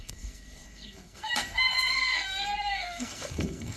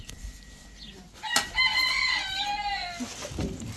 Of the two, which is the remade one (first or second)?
first